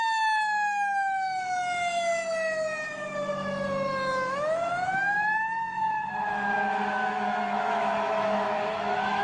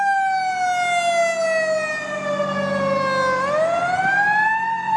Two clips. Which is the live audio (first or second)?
second